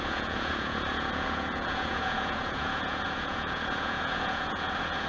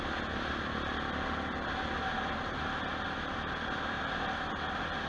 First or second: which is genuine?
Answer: second